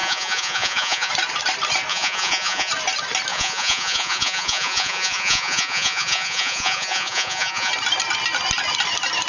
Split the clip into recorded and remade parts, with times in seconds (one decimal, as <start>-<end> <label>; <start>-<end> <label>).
0.0-1.1 remade; 1.1-1.9 recorded; 1.9-2.7 remade; 2.7-3.3 recorded; 3.3-7.7 remade; 7.7-9.3 recorded